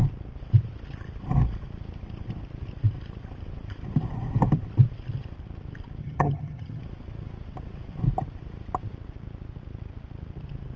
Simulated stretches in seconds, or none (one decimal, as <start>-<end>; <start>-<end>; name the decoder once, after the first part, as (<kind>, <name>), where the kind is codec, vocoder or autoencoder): 6.0-6.8 (vocoder, HiFi-GAN)